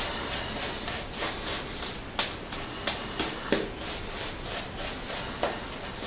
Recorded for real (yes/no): yes